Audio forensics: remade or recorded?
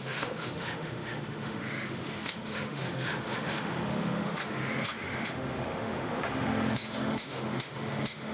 remade